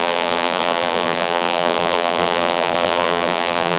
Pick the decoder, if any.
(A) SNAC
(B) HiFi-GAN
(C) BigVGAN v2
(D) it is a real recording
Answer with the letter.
C